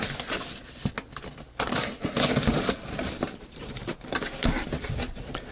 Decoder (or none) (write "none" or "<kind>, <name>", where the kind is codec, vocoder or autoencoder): none